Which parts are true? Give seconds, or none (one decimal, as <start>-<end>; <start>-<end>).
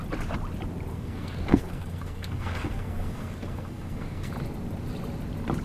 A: 0.0-0.9; 4.3-5.6